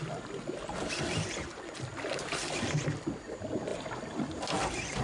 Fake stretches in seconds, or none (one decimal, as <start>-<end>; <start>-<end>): none